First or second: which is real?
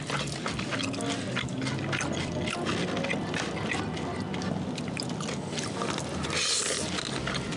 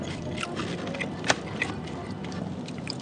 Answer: first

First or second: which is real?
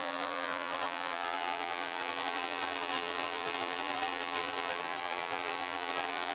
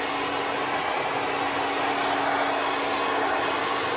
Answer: second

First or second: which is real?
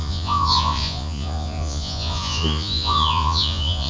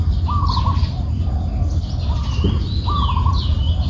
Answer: second